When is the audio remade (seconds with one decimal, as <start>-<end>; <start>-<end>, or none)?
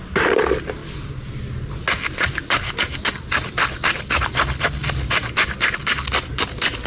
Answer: none